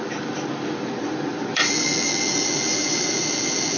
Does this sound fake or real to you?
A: fake